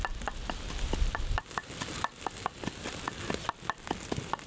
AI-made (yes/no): no